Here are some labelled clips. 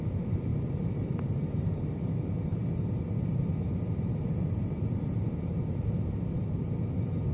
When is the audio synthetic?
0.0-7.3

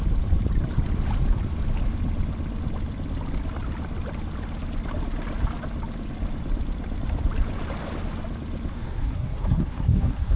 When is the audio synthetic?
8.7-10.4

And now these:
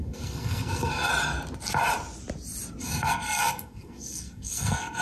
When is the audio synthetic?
0.0-1.1; 2.8-5.0